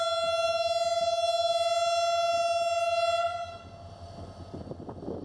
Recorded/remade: recorded